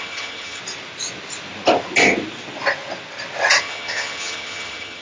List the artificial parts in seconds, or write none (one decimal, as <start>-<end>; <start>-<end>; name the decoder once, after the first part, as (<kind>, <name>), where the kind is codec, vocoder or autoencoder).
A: 0.0-0.6 (vocoder, HiFi-GAN); 3.6-5.0